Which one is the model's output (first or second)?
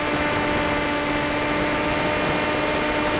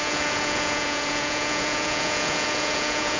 second